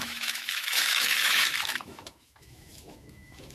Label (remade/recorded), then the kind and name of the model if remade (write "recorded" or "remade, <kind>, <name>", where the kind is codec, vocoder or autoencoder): remade, autoencoder, DAC-VAE